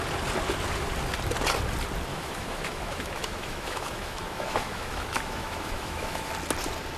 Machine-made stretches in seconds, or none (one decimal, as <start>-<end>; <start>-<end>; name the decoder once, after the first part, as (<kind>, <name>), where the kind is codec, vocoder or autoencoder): 2.1-6.3 (autoencoder, DAC-VAE)